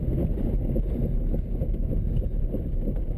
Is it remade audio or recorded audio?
recorded